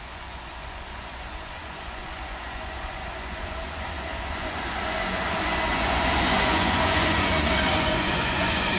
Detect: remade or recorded remade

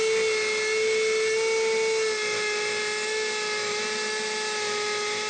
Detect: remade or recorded recorded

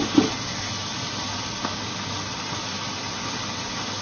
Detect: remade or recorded recorded